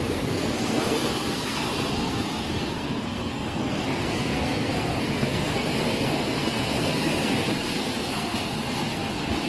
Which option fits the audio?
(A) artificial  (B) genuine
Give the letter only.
A